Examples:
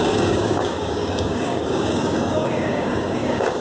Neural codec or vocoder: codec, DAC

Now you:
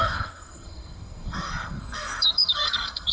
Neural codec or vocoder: codec, SNAC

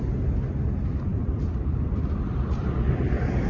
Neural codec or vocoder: none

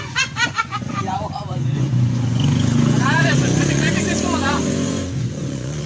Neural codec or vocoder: vocoder, Vocos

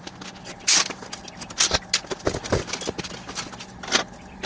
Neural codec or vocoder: none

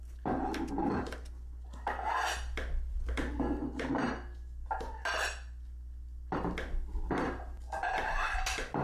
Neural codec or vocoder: none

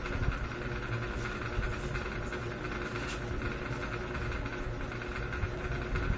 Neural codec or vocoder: none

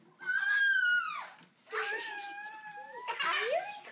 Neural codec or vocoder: none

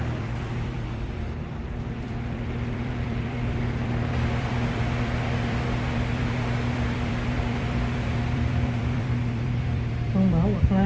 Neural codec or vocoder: vocoder, BigVGAN v2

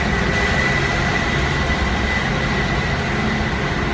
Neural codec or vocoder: none